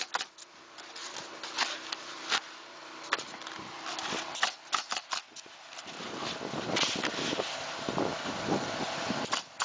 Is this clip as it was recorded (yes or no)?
yes